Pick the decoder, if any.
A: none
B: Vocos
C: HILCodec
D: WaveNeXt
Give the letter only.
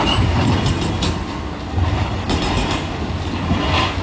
A